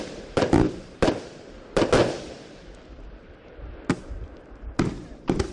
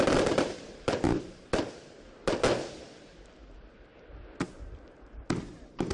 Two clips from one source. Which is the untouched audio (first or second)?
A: second